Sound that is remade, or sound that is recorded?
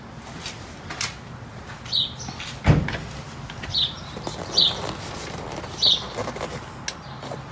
recorded